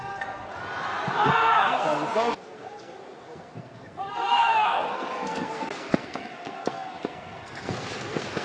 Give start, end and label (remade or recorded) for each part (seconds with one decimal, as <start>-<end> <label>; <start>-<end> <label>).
0.0-0.5 remade; 0.5-1.3 recorded; 1.3-8.4 remade